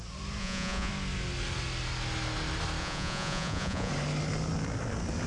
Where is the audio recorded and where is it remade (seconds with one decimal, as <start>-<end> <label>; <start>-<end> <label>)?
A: 0.0-0.4 recorded; 0.4-0.9 remade; 0.9-2.8 recorded; 2.8-3.9 remade; 3.9-5.3 recorded